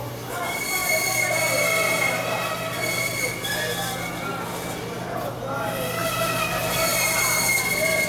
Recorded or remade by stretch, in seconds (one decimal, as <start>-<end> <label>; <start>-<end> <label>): 0.0-8.1 recorded